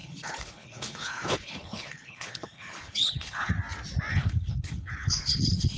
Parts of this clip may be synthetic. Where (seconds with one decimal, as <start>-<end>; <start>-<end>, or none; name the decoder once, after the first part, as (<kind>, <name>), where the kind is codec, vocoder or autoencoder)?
0.0-3.5 (codec, HILCodec); 4.1-5.8

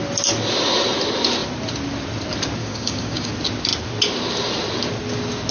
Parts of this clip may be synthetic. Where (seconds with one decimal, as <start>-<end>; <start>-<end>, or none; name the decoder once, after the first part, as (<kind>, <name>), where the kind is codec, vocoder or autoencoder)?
2.6-3.3 (codec, DAC)

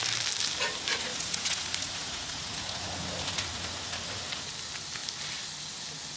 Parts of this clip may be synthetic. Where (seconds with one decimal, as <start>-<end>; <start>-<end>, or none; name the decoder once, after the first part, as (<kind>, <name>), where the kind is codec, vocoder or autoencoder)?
1.1-4.0 (vocoder, Vocos)

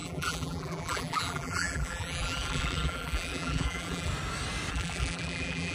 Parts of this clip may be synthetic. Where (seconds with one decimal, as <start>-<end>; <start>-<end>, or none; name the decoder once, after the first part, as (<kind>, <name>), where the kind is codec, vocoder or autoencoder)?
0.0-4.1 (vocoder, BigVGAN v2); 4.7-5.7

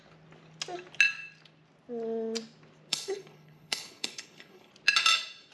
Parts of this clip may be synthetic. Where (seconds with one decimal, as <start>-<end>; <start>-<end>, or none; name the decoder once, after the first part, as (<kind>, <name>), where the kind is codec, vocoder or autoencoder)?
2.9-4.7 (codec, HILCodec)

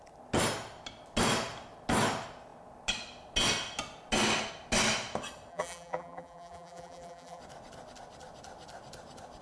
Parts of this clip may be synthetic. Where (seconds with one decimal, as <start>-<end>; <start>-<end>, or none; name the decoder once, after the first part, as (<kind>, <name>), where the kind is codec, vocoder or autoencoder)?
5.5-7.4 (vocoder, BigVGAN v2)

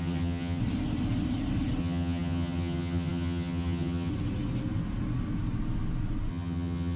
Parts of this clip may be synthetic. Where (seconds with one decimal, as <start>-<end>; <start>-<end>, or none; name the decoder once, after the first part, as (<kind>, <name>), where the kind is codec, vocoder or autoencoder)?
0.0-0.6 (vocoder, HiFi-GAN); 1.8-4.1; 6.3-7.0

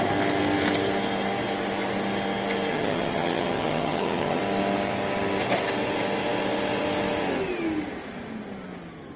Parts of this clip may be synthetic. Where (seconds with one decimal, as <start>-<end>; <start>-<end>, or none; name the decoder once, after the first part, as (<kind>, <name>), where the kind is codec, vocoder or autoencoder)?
2.7-4.4 (vocoder, HiFi-GAN)